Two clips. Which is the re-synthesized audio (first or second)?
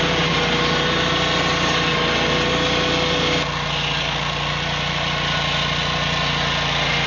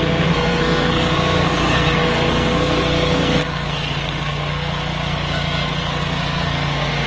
second